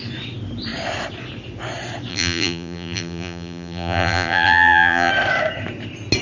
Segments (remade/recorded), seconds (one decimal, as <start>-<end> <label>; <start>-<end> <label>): 0.0-2.1 recorded; 2.1-5.1 remade; 5.1-6.2 recorded